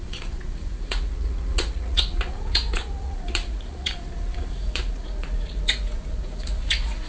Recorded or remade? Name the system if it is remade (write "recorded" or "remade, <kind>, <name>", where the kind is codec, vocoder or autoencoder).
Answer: remade, vocoder, Vocos